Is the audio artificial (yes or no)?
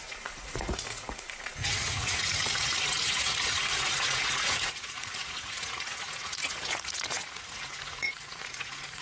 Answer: yes